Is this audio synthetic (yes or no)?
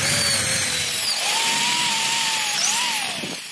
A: no